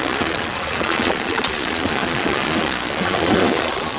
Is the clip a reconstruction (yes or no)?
yes